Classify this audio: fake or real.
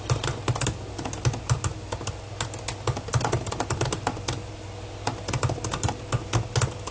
real